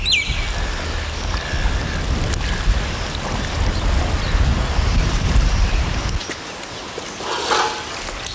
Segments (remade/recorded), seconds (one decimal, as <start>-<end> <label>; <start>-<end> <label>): 0.0-4.9 recorded; 4.9-6.0 remade; 6.0-8.3 recorded